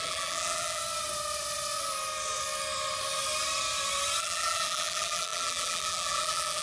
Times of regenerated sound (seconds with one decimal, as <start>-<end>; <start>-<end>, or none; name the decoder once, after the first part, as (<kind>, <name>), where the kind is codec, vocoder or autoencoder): 0.0-0.8 (vocoder, BigVGAN v2); 4.2-6.6